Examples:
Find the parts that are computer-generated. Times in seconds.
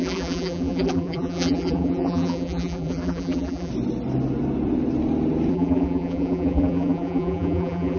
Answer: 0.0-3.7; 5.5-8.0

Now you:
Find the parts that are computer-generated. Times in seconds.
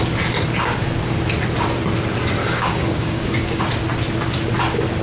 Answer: 2.4-3.6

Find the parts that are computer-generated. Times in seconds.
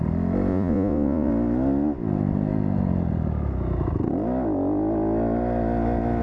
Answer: 0.5-1.3